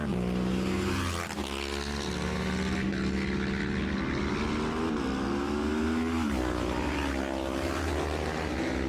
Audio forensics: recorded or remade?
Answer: recorded